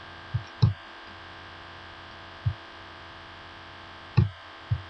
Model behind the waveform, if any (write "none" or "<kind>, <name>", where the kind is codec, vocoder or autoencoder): none